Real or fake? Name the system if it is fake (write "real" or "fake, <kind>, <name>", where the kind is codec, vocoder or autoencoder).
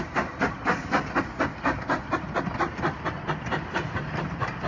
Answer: real